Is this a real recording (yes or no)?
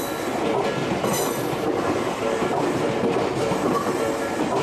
no